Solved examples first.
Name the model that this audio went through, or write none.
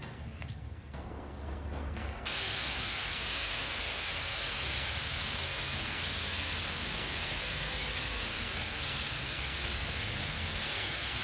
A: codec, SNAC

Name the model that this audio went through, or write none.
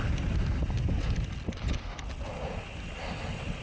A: none